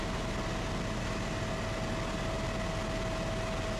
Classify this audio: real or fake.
real